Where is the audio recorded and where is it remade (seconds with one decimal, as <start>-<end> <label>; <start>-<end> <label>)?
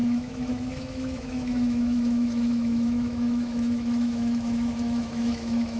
0.0-5.8 remade